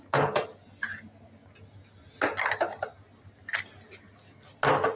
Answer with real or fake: real